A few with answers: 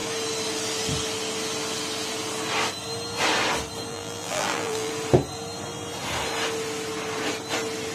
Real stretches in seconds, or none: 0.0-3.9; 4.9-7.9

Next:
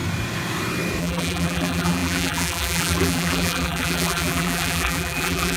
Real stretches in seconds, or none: 0.0-1.0

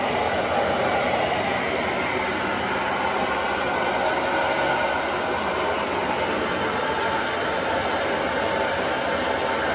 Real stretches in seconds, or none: 0.0-9.7